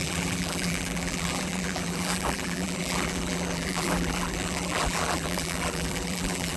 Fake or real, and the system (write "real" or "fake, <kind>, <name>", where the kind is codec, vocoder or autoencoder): fake, vocoder, BigVGAN v2